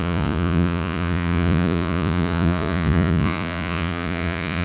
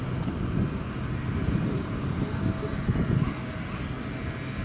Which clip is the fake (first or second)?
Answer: first